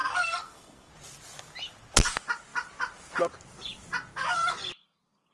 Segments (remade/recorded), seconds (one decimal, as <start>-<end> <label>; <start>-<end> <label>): 0.0-0.9 remade; 0.9-5.3 recorded